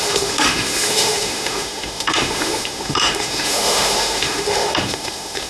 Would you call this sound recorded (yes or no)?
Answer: no